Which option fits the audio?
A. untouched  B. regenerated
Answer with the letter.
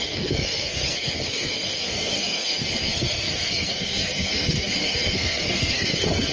B